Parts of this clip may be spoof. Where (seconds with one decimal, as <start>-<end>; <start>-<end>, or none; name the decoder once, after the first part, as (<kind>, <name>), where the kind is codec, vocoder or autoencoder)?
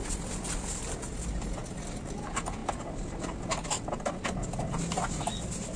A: none